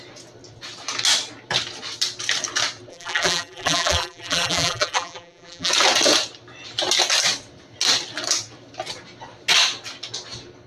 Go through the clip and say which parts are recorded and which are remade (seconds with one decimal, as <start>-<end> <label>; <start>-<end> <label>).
0.0-2.9 recorded; 2.9-5.7 remade; 5.7-10.7 recorded